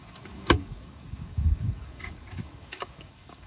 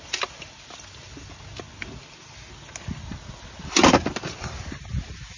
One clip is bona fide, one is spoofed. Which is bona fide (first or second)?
second